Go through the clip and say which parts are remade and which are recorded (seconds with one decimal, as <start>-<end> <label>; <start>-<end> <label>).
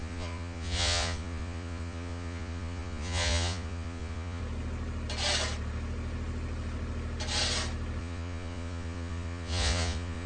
0.0-4.4 remade; 4.4-8.0 recorded; 8.0-10.3 remade